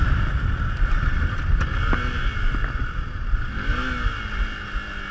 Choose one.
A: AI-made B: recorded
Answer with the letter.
B